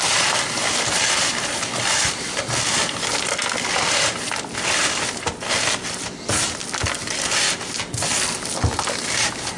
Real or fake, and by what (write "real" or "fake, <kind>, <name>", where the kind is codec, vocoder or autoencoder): real